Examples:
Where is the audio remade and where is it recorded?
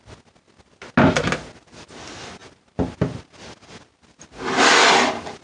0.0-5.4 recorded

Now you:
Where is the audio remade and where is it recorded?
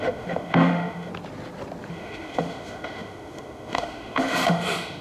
0.0-1.1 remade; 1.1-1.9 recorded; 1.9-5.0 remade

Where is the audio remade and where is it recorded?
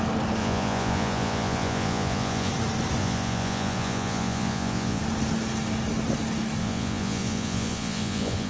0.0-0.4 recorded; 0.4-2.5 remade; 2.5-3.0 recorded; 3.0-5.0 remade; 5.0-6.6 recorded; 6.6-8.5 remade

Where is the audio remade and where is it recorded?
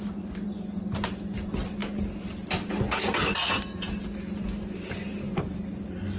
0.0-6.2 recorded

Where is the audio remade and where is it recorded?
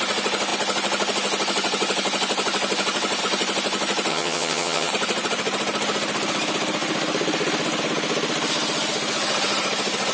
0.0-4.1 recorded; 4.1-4.9 remade; 4.9-10.1 recorded